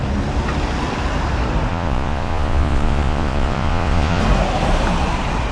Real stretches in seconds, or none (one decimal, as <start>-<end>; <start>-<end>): 0.0-1.7; 4.2-5.5